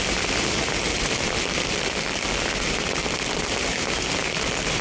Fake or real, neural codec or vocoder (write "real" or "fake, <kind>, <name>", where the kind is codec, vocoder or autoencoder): real